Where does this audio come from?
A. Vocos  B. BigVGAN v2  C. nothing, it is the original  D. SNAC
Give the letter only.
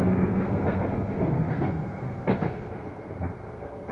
D